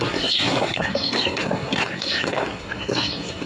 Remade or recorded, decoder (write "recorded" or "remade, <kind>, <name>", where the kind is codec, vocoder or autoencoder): remade, codec, SNAC